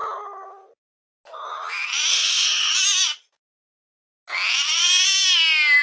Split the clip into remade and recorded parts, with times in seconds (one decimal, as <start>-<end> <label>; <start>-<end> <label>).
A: 0.0-2.1 recorded; 2.1-2.7 remade; 2.7-5.8 recorded